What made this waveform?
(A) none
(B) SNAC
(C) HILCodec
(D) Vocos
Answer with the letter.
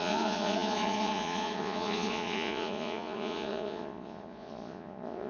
D